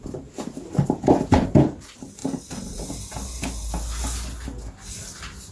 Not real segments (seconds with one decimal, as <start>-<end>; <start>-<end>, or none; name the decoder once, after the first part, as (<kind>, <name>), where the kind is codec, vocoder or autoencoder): none